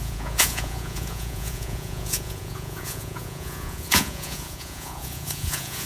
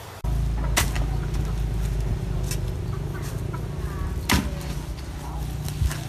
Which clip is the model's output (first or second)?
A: first